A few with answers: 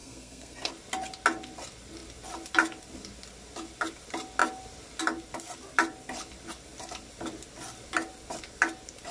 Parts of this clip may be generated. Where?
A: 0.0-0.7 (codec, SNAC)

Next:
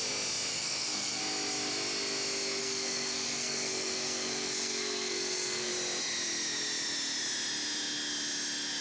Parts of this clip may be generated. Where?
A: 0.5-1.2 (codec, SNAC); 2.6-5.7

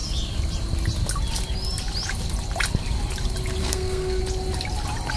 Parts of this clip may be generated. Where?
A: 3.6-4.2 (codec, SNAC)

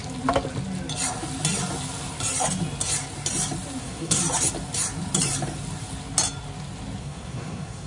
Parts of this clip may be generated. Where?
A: 3.8-4.2 (codec, SNAC); 7.0-7.9